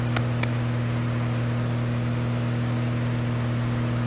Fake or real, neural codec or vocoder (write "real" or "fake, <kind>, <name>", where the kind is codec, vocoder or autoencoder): real